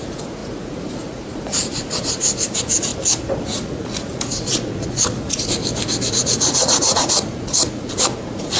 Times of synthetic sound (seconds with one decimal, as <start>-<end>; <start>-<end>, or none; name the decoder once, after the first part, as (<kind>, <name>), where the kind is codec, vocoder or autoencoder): 0.0-2.9 (vocoder, Vocos); 3.4-5.6; 6.1-8.6